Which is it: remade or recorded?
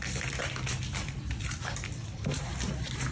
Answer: recorded